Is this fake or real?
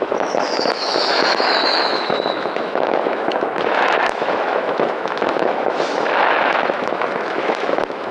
fake